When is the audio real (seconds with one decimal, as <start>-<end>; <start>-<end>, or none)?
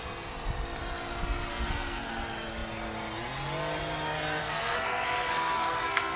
0.0-1.5; 2.1-4.4